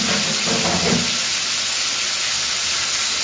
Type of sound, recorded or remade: recorded